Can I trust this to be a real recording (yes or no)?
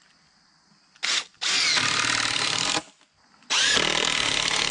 yes